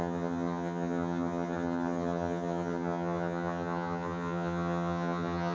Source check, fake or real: fake